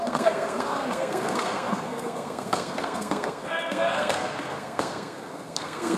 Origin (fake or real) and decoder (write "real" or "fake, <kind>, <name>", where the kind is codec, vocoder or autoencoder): fake, codec, SNAC